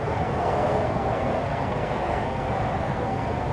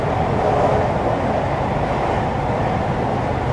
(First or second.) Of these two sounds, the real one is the second